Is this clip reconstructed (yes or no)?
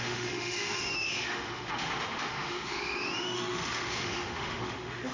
yes